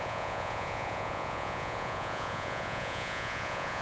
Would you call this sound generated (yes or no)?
yes